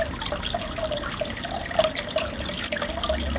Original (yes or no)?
yes